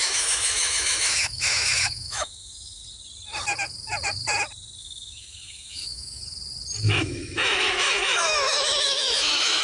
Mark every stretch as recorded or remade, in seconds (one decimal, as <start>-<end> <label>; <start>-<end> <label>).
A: 0.0-2.8 remade; 2.8-4.8 recorded; 4.8-6.2 remade; 6.2-6.8 recorded; 6.8-9.6 remade

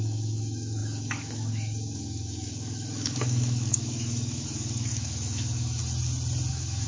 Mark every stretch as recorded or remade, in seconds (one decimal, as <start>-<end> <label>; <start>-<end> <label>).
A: 0.0-5.8 remade; 5.8-6.5 recorded; 6.5-6.9 remade

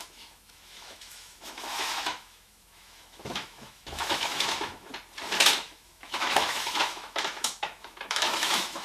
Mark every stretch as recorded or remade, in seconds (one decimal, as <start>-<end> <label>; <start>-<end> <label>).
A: 0.0-4.9 remade; 4.9-5.4 recorded; 5.4-8.8 remade

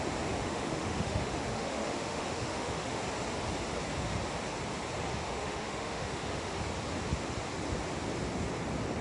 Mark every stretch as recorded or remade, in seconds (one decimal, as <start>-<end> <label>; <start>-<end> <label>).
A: 0.0-0.4 recorded; 0.4-3.0 remade; 3.0-5.1 recorded; 5.1-6.6 remade; 6.6-9.0 recorded